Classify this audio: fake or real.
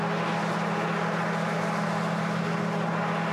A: real